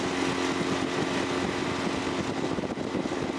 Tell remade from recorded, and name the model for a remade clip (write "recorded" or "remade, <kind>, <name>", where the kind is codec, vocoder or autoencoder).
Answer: recorded